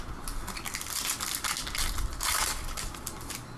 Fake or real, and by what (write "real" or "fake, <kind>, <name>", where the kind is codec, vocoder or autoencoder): real